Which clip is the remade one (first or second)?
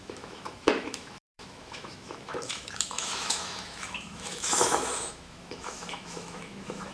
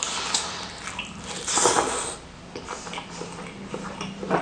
first